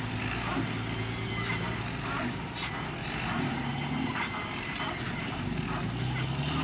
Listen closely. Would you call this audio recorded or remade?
recorded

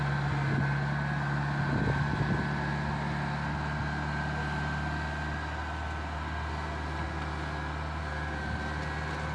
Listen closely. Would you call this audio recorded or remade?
recorded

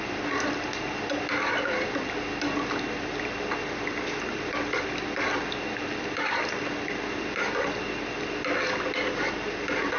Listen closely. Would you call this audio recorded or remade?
recorded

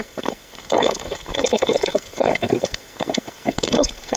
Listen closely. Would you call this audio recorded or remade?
remade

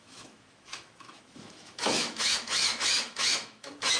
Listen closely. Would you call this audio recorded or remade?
remade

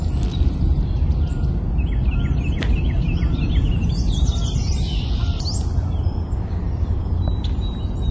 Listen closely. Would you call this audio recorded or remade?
recorded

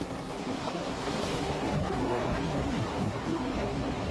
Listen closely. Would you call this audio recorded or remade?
remade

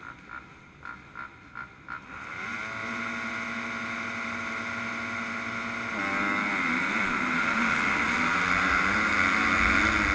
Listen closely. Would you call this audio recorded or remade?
recorded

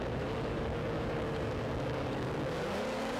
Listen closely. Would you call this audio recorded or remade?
remade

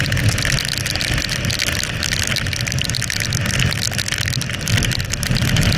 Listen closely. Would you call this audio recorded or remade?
recorded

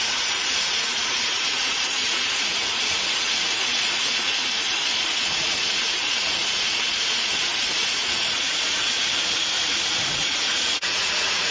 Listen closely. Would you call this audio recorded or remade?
remade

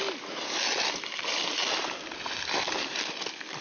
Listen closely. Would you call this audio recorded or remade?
recorded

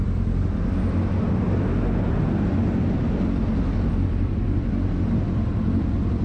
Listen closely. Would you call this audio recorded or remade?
recorded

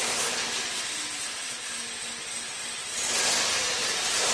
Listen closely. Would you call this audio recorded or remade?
recorded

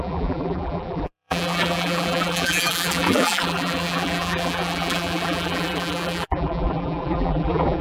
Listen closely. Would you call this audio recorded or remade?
remade